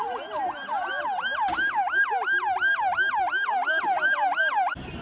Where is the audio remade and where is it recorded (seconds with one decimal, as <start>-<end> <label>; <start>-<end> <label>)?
0.0-5.0 recorded